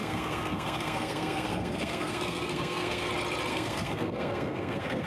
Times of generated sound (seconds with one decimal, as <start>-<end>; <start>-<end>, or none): 0.0-3.1; 3.5-5.1